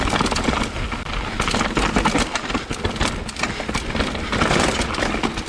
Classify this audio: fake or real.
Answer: real